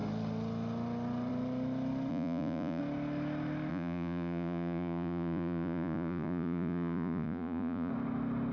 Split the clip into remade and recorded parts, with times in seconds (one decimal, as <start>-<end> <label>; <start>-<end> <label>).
0.0-2.1 recorded; 2.1-2.8 remade; 2.8-3.7 recorded; 3.7-7.9 remade; 7.9-8.5 recorded

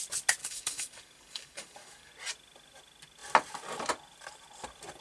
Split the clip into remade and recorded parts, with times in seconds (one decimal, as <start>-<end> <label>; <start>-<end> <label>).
0.0-0.4 recorded; 0.4-2.1 remade; 2.1-5.0 recorded

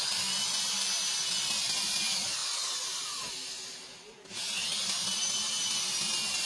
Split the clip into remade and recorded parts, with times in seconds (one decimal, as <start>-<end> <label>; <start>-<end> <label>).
0.0-6.5 recorded

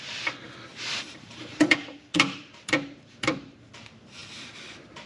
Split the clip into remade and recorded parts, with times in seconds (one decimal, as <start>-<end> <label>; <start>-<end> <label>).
0.0-0.7 recorded; 0.7-3.8 remade; 3.8-5.1 recorded

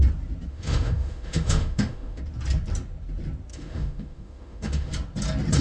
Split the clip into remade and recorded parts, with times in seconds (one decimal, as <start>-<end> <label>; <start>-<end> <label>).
0.0-0.5 recorded; 0.5-2.2 remade; 2.2-3.5 recorded; 3.5-4.9 remade; 4.9-5.6 recorded